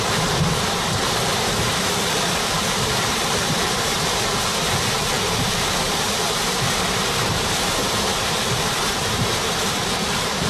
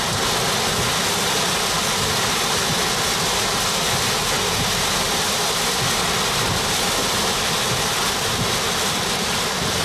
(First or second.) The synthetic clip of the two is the first